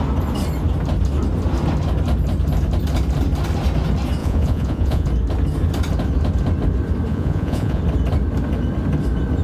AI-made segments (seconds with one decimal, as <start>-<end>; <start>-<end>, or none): 4.2-5.1; 7.1-7.8